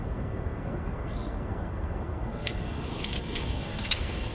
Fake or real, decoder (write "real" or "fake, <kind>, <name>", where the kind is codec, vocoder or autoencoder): fake, codec, SNAC